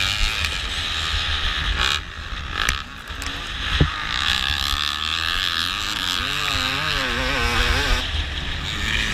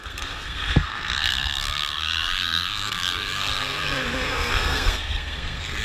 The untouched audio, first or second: first